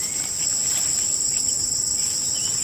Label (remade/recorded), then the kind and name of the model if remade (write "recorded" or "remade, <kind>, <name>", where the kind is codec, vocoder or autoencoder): recorded